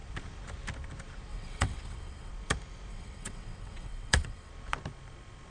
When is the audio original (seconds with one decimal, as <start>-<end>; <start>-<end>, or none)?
0.0-1.3; 2.3-2.9; 4.5-5.5